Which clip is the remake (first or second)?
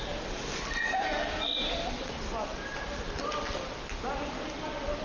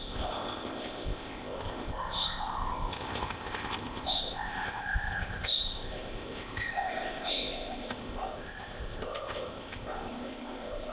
second